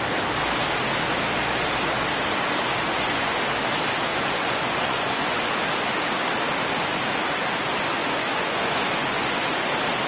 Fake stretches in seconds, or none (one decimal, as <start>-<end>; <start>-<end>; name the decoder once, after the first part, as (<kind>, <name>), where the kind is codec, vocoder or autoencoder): 2.9-3.4 (vocoder, Vocos); 4.1-5.5; 8.0-9.7